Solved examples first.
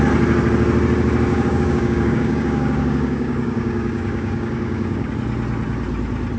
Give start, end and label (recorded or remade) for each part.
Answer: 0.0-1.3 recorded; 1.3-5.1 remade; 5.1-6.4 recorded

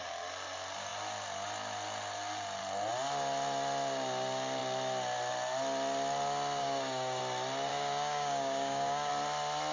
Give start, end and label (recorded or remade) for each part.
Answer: 0.0-6.6 recorded; 6.6-7.2 remade; 7.2-7.7 recorded; 7.7-9.1 remade; 9.1-9.7 recorded

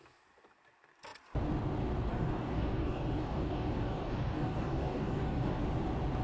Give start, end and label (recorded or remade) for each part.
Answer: 0.0-2.1 recorded; 2.1-5.6 remade; 5.6-6.2 recorded

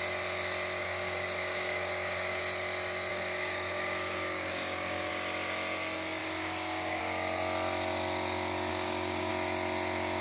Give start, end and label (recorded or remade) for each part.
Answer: 0.0-0.8 recorded; 0.8-2.4 remade; 2.4-3.1 recorded; 3.1-5.1 remade; 5.1-6.2 recorded; 6.2-7.0 remade; 7.0-8.7 recorded; 8.7-9.3 remade; 9.3-10.2 recorded

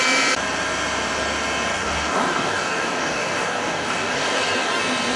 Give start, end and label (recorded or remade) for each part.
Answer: 0.0-1.7 recorded; 1.7-4.8 remade; 4.8-5.2 recorded

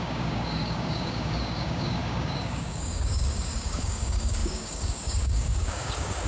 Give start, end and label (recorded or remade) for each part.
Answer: 0.0-6.3 remade

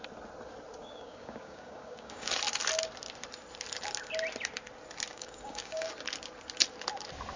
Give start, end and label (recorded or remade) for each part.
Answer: 0.0-0.8 recorded; 0.8-2.3 remade; 2.3-5.1 recorded; 5.1-5.9 remade; 5.9-7.4 recorded